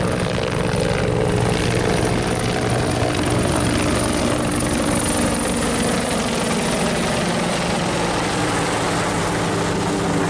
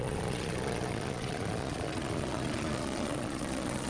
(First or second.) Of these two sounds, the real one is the first